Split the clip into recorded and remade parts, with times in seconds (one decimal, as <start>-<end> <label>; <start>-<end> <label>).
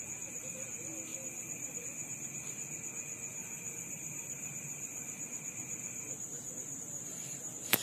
0.0-1.1 recorded; 1.1-1.8 remade; 1.8-3.4 recorded; 3.4-5.1 remade; 5.1-7.8 recorded